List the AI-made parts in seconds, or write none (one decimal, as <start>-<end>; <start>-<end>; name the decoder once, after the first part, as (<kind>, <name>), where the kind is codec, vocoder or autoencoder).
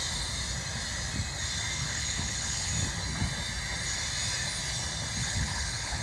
1.8-2.7 (codec, HILCodec); 5.2-6.0